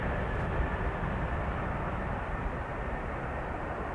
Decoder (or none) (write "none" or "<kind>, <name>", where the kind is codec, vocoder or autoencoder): none